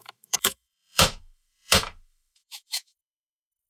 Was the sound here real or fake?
fake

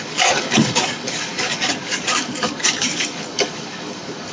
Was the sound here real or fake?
fake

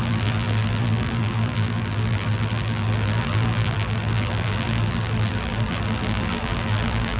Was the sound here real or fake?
fake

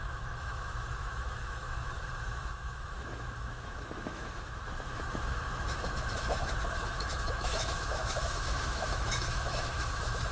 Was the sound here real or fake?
fake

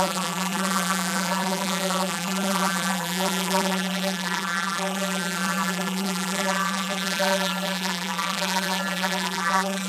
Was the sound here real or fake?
fake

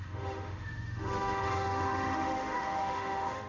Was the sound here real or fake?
fake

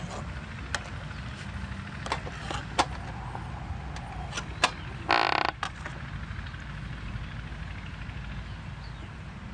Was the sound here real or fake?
real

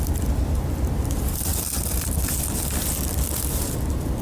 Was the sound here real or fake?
real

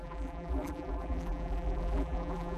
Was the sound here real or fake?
fake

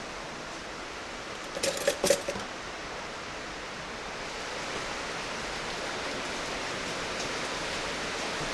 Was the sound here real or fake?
real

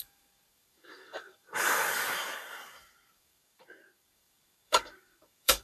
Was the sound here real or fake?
fake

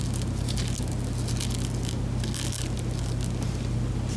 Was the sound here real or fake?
real